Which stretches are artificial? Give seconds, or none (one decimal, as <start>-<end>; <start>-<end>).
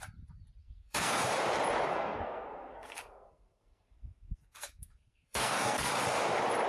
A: 0.6-1.2; 1.9-5.9